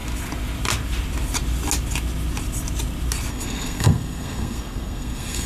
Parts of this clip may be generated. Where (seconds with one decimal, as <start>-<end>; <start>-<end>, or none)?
3.3-5.5